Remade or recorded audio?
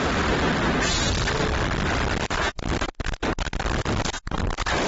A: recorded